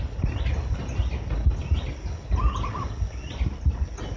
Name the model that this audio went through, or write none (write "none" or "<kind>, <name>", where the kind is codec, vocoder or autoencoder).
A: none